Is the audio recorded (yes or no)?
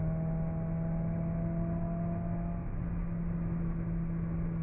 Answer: yes